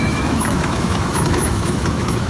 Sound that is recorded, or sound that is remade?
remade